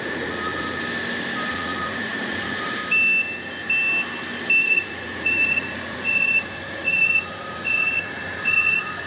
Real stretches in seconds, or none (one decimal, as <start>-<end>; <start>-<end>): 0.8-1.5; 2.8-4.6